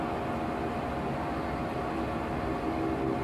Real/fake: real